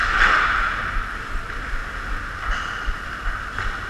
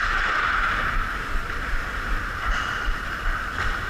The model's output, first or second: second